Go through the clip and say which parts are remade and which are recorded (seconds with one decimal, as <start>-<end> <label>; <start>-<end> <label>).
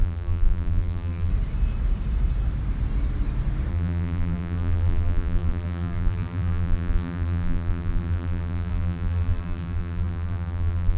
0.0-1.3 remade; 1.3-3.7 recorded; 3.7-11.0 remade